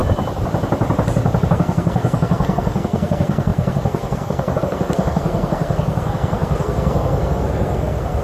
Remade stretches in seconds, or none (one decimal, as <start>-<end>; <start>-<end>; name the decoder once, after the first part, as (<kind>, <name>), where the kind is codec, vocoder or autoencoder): 1.5-8.2 (codec, SNAC)

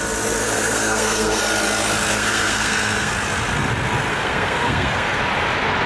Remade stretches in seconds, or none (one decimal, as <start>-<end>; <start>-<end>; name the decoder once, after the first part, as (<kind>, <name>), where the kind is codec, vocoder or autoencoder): 0.4-1.4 (codec, SNAC); 2.1-3.1; 4.1-5.2

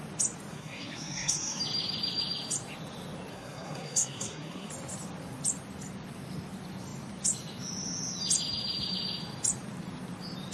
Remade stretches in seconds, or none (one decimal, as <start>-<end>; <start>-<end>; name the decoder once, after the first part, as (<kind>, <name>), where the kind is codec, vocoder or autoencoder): 0.5-1.6 (codec, SNAC); 3.3-4.7

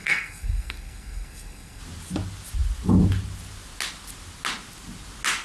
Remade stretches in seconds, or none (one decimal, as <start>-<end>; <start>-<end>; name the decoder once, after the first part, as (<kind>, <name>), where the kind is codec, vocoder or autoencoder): 0.0-1.8 (codec, SNAC)

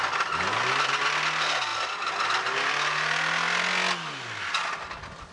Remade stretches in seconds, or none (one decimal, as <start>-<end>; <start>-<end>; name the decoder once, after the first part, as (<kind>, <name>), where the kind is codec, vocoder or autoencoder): none

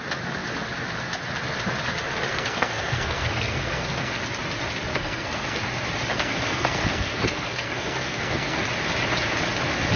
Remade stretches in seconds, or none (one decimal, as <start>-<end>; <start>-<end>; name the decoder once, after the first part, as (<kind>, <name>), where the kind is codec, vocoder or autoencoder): 2.3-4.2 (codec, SNAC); 4.9-5.6; 6.1-8.7

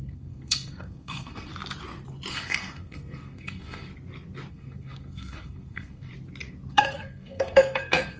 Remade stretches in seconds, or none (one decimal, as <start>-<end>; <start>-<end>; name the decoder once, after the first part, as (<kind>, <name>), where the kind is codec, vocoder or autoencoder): 0.0-1.5 (codec, SNAC); 2.3-3.9; 4.5-6.1; 6.7-8.2